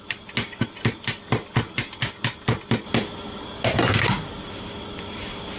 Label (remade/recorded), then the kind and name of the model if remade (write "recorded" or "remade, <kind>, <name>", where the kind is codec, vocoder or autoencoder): recorded